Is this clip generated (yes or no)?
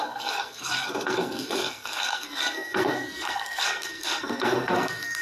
yes